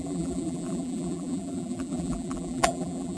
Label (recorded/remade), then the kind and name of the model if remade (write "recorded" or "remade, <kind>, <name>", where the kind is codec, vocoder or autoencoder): remade, vocoder, BigVGAN v2